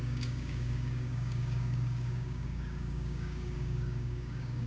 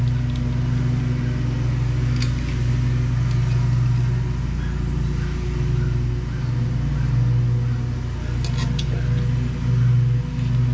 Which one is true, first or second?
second